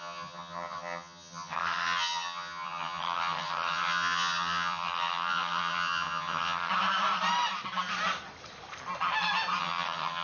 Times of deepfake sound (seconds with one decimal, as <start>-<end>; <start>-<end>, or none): 0.0-6.7; 9.6-10.2